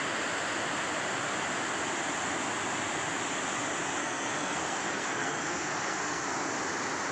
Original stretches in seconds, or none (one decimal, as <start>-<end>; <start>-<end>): 0.0-4.0; 6.5-7.1